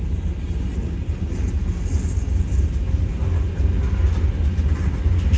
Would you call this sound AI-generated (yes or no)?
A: no